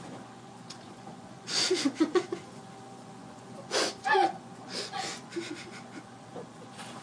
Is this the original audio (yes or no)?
no